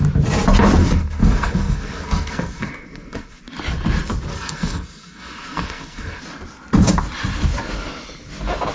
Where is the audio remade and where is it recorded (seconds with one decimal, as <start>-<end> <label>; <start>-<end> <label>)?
0.0-0.8 recorded; 0.8-3.4 remade; 3.4-4.3 recorded; 4.3-6.2 remade; 6.2-8.7 recorded